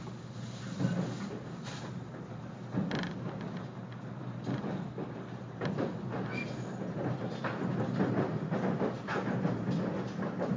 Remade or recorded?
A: recorded